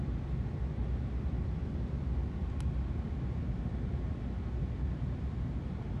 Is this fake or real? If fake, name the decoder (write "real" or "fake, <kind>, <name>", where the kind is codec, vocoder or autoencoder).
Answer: real